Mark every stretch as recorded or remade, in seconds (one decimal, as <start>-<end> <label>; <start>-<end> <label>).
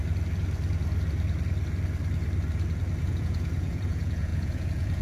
0.0-3.0 recorded; 3.0-5.0 remade